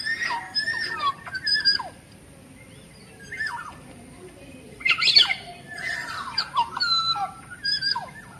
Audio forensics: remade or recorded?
recorded